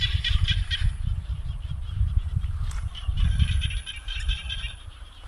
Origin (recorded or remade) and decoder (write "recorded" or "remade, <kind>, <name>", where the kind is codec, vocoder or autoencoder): remade, vocoder, BigVGAN v2